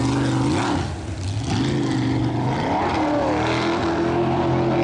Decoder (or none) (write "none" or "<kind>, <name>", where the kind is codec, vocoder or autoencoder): none